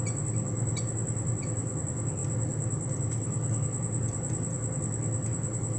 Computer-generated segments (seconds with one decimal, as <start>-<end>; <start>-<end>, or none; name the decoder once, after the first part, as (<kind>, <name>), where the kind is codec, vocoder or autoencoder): none

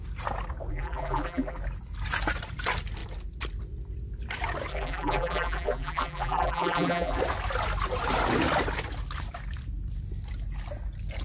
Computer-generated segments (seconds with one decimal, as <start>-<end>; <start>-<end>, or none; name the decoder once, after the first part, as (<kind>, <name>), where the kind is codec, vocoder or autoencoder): 0.7-1.6 (vocoder, BigVGAN v2); 4.7-7.2

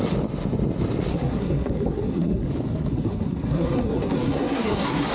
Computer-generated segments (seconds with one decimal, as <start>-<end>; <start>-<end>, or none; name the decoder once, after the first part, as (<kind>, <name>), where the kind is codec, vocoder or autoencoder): 1.1-2.5 (codec, SNAC); 2.9-5.1